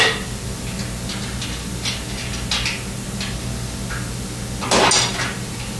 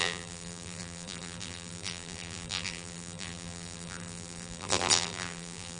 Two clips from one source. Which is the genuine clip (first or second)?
first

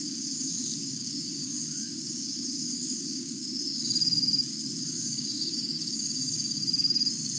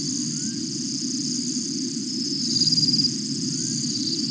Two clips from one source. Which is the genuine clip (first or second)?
second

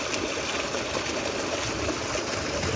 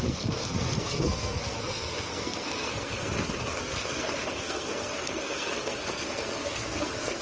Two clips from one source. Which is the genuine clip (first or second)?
first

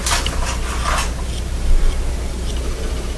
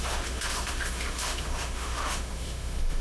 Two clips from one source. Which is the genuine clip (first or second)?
first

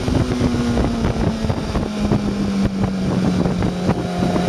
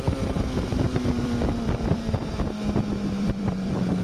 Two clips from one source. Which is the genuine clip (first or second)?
first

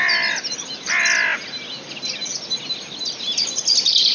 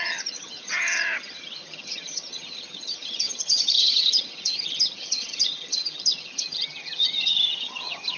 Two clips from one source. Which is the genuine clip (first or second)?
first